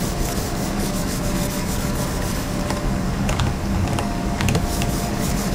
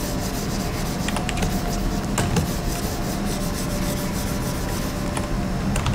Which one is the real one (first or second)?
second